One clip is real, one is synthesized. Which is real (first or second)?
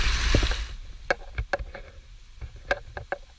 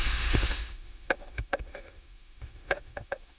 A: first